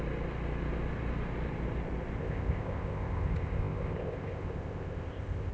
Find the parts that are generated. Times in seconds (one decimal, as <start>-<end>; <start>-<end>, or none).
2.2-5.5

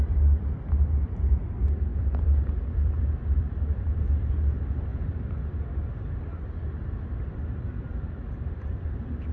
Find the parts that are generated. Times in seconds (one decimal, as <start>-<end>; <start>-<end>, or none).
0.0-9.3

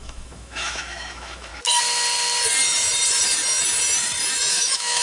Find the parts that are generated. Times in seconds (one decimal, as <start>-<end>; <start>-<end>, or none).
0.0-1.5; 4.5-5.0

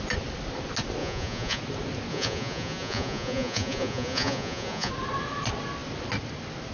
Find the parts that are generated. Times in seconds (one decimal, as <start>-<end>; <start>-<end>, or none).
1.0-1.6; 2.1-4.9

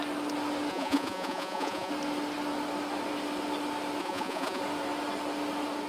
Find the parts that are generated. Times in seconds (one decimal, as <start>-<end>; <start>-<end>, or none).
0.7-1.9; 4.0-4.6

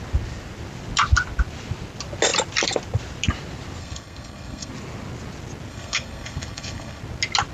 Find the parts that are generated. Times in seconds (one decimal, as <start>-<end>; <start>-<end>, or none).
3.8-4.7; 5.7-7.0

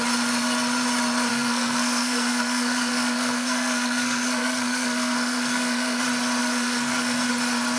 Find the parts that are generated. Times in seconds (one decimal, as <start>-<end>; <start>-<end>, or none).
1.3-6.0; 6.4-7.3

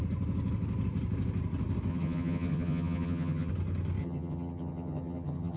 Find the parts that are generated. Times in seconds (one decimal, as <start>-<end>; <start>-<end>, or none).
1.9-3.5; 4.0-5.6